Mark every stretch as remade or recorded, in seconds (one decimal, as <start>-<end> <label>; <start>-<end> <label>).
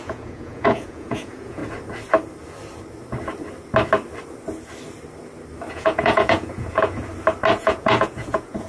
0.0-1.6 remade; 1.6-5.7 recorded; 5.7-7.0 remade; 7.0-7.5 recorded; 7.5-8.7 remade